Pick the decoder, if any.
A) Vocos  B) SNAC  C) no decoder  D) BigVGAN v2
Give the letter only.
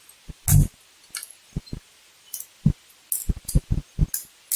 C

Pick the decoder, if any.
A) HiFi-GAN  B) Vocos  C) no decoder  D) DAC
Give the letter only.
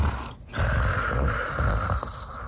C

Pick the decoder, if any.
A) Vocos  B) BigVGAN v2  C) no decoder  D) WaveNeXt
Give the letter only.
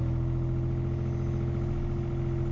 C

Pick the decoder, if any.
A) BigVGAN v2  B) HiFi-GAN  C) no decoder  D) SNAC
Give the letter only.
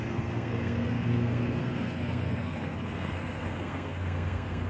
D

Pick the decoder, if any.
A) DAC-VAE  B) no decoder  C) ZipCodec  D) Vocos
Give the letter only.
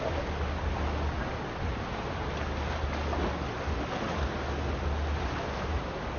B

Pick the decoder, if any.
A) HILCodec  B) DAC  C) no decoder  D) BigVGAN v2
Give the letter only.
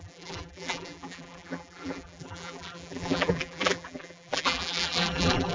D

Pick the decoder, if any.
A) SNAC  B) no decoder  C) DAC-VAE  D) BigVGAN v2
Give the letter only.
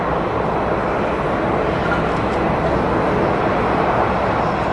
B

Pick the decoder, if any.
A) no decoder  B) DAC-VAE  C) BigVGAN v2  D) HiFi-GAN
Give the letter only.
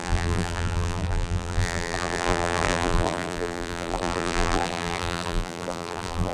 C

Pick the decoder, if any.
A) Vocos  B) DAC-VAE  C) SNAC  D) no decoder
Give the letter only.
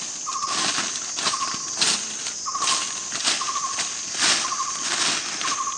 D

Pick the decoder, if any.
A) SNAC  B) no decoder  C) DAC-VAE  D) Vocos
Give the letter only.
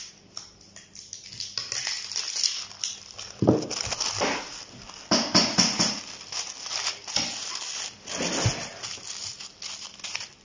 B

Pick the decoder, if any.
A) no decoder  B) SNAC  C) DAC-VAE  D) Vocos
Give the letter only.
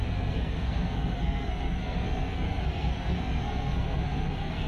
B